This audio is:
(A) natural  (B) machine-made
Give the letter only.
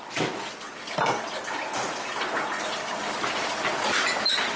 A